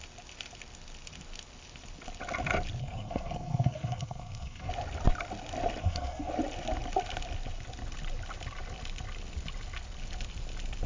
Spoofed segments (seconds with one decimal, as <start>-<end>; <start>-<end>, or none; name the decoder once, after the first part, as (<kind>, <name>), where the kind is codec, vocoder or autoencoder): 2.8-4.7 (codec, SNAC); 5.8-6.3